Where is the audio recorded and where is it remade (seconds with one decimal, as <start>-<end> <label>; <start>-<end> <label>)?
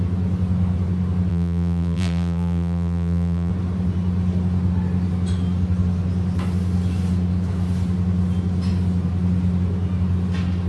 0.0-1.3 recorded; 1.3-3.5 remade; 3.5-10.7 recorded